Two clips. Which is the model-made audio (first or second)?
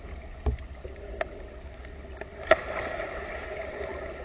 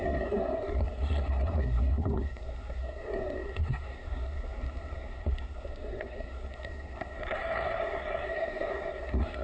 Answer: second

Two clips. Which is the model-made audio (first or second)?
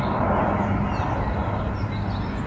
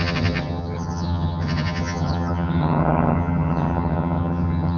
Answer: second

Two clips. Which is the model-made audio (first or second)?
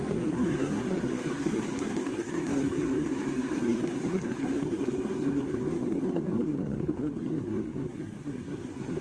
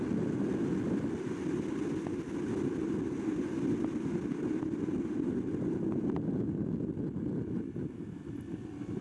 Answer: first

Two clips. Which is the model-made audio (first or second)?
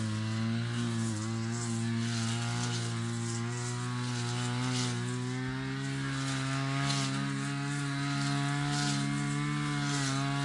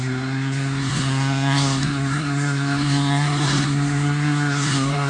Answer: second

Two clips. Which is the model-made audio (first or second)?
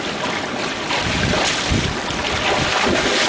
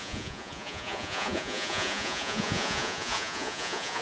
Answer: second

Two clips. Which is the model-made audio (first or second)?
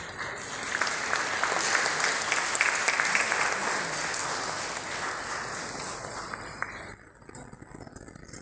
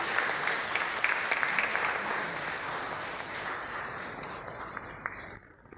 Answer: second